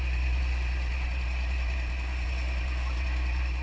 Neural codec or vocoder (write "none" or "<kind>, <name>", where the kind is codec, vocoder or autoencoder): none